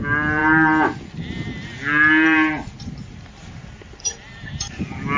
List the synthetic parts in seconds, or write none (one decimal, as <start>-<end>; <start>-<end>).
none